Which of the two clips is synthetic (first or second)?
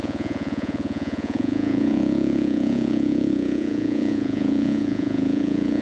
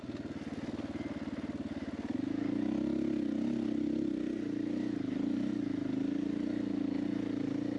first